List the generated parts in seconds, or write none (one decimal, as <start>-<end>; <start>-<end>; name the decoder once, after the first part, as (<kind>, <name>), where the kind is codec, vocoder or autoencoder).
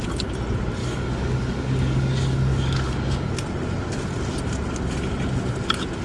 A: 0.8-3.3 (codec, DAC)